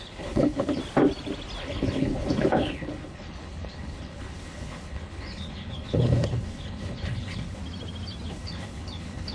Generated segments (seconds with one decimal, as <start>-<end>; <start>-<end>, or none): 0.0-0.8; 1.6-7.6; 8.3-9.3